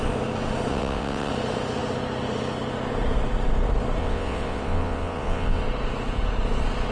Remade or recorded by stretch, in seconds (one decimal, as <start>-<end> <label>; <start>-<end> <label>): 0.0-0.7 recorded; 0.7-1.3 remade; 1.3-4.0 recorded; 4.0-5.6 remade; 5.6-6.9 recorded

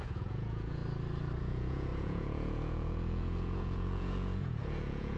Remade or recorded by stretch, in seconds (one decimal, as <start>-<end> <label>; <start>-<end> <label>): 0.0-0.8 remade; 0.8-1.4 recorded; 1.4-5.2 remade

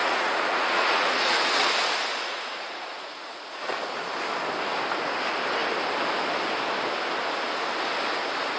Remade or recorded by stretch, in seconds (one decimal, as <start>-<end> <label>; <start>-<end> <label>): 0.0-1.7 remade; 1.7-2.1 recorded; 2.1-3.8 remade; 3.8-8.6 recorded

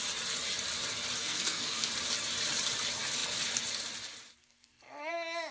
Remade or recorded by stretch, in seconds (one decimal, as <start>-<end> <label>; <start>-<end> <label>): 0.0-1.2 recorded; 1.2-1.9 remade; 1.9-4.4 recorded; 4.4-5.1 remade; 5.1-5.5 recorded